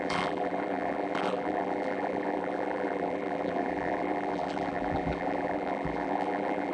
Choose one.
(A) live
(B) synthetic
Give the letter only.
B